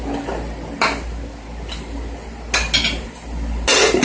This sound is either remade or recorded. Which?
recorded